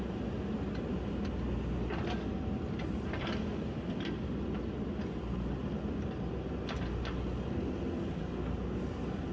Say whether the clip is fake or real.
real